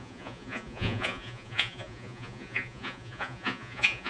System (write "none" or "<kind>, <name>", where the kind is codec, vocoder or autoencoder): vocoder, Vocos